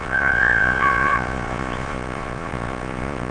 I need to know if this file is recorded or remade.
remade